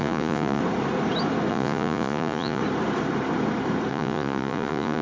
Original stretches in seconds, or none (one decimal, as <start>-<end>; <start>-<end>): 0.6-1.5; 2.6-3.9